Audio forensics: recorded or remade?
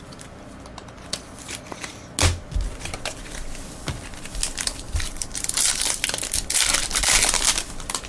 recorded